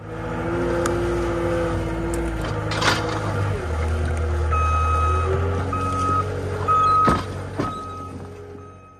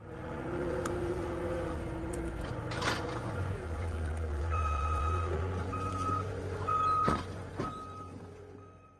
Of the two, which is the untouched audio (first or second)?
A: first